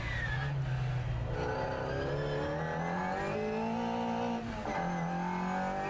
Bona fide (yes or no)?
yes